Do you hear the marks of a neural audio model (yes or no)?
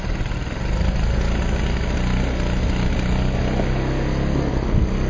no